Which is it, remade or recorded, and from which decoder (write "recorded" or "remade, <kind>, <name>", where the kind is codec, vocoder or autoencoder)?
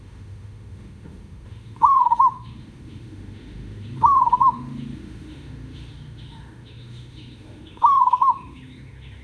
remade, autoencoder, DAC-VAE